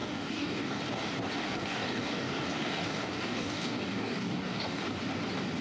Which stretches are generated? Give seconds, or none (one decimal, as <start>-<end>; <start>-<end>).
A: 0.0-0.8; 1.4-4.8